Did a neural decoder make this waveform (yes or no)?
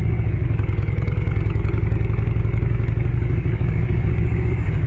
yes